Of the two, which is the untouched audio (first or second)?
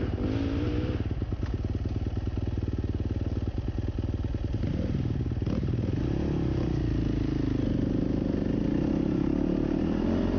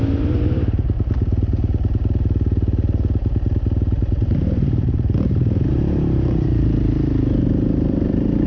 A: first